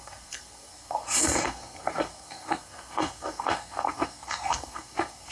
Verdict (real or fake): fake